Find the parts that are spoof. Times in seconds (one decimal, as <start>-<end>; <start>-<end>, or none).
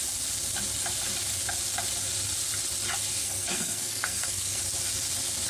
3.2-4.6